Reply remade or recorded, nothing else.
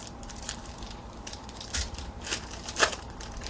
remade